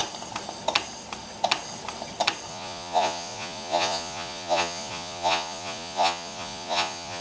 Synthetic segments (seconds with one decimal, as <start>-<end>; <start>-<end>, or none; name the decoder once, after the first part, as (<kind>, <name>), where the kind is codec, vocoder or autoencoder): 2.5-7.2 (vocoder, Vocos)